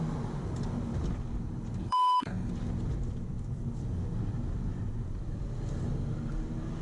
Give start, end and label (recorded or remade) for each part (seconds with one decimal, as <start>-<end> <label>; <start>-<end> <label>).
0.0-1.8 recorded; 1.8-2.5 remade; 2.5-6.8 recorded